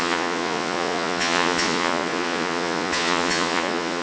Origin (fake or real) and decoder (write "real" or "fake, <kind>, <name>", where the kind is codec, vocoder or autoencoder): fake, vocoder, Vocos